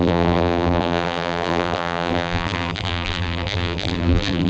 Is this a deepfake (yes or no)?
yes